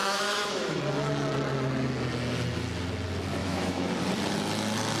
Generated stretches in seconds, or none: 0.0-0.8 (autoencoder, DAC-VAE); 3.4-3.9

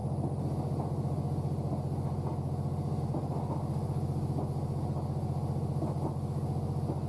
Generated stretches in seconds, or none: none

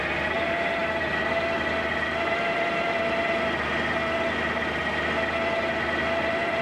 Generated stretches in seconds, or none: none

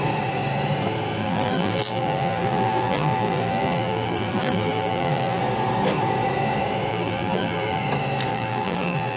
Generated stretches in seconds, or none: 1.2-5.4 (vocoder, BigVGAN v2); 6.9-7.8; 8.3-9.2

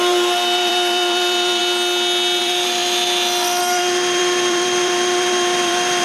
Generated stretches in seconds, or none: 0.0-1.6 (vocoder, BigVGAN v2); 2.4-2.8; 3.6-6.0